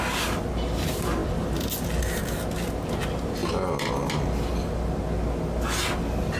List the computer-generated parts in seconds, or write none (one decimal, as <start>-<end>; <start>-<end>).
none